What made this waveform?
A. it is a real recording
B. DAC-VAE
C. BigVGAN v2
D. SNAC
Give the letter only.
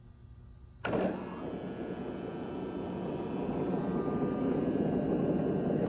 A